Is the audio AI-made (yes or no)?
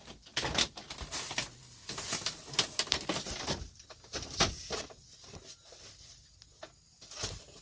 no